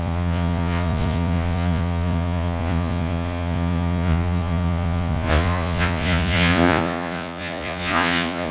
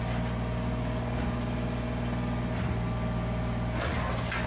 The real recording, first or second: second